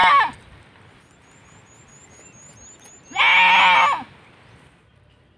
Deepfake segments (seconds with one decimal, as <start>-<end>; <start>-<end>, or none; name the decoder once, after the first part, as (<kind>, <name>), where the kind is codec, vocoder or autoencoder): none